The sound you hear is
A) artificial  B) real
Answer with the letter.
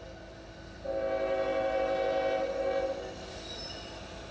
B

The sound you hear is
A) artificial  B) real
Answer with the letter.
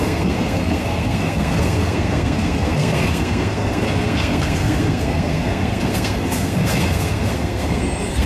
A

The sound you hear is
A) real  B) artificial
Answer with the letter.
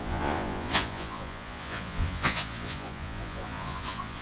B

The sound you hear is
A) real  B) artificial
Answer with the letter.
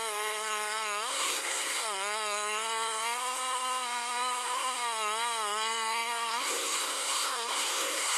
B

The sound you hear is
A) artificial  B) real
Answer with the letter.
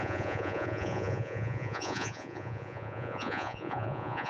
A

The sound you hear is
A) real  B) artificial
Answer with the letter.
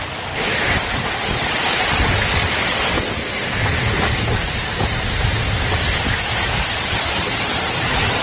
A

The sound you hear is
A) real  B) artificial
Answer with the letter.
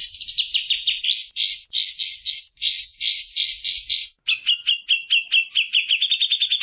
A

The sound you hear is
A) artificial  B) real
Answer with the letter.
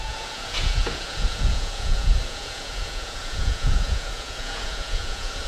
A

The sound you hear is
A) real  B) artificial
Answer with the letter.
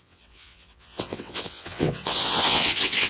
B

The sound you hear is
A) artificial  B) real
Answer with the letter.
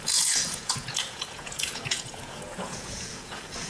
A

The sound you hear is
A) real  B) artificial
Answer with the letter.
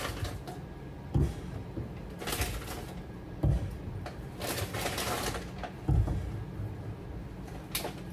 A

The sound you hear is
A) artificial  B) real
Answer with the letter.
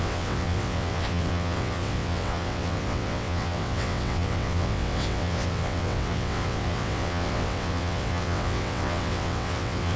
A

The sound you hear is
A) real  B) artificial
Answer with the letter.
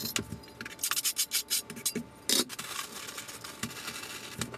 A